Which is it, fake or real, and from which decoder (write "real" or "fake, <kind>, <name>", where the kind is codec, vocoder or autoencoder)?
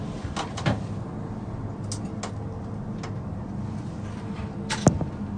real